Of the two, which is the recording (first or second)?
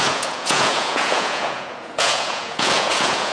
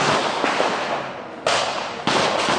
second